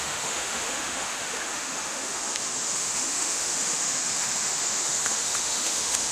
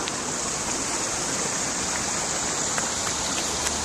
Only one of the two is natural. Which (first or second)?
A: second